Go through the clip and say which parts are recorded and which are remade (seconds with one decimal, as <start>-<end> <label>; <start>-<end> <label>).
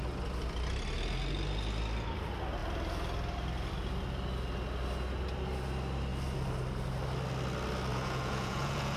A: 0.0-7.9 recorded; 7.9-9.0 remade